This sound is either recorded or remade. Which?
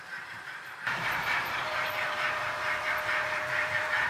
remade